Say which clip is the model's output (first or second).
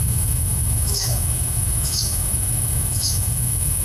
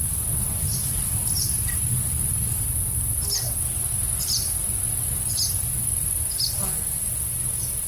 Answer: first